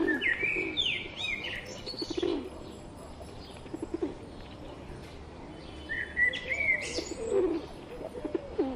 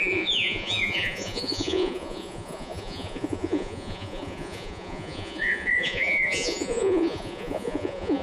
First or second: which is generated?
second